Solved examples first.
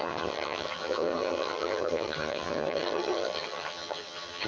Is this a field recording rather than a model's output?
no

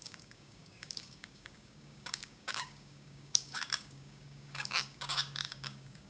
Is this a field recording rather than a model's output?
no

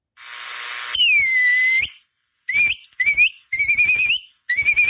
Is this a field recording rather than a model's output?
yes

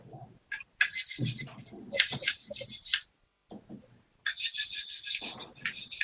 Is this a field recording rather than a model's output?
yes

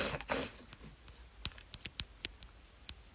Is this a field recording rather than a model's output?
yes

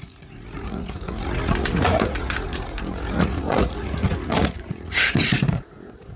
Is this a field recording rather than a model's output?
no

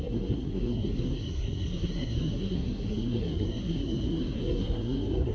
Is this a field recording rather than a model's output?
no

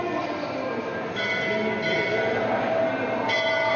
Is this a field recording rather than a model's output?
yes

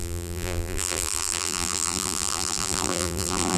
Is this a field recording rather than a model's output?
no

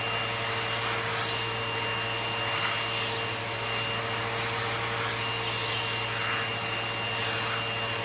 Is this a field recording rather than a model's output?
yes